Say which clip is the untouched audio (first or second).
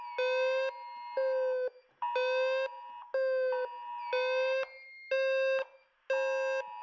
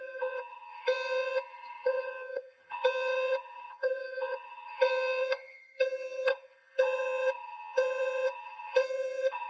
first